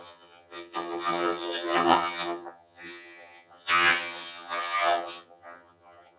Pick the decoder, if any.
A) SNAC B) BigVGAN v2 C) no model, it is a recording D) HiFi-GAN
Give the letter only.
D